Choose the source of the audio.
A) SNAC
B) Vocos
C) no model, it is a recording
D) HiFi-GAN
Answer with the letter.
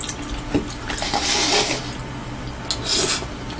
C